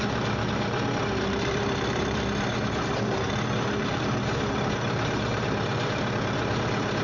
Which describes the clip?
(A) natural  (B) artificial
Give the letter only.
B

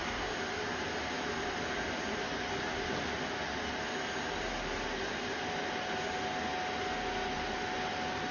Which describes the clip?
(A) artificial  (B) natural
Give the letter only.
B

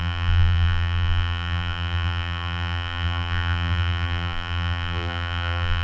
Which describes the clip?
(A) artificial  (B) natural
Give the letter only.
A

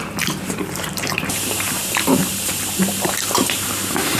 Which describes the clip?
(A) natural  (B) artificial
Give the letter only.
B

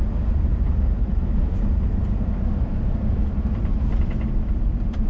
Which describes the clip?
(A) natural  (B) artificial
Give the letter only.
B